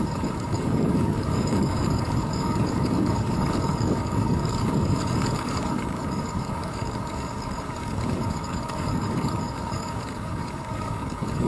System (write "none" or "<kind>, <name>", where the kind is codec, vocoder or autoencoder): codec, DAC